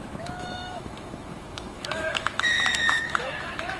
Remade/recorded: remade